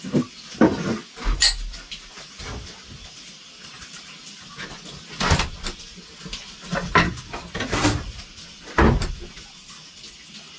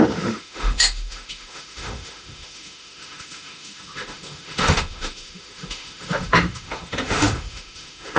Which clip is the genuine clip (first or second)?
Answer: first